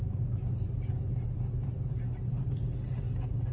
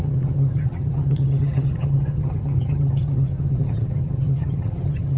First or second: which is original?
first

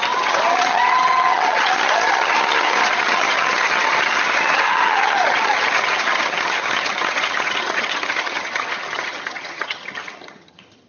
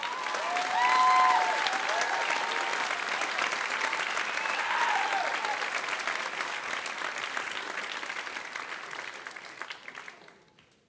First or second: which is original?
second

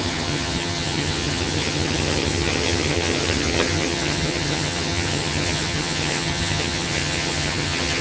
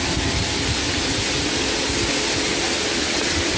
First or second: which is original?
second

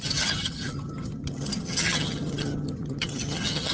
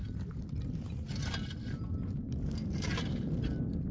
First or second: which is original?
second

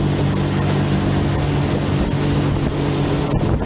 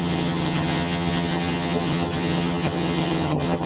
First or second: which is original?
first